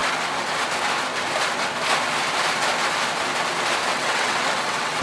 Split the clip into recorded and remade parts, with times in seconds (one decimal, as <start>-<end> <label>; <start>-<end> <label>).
0.0-3.9 recorded; 3.9-5.0 remade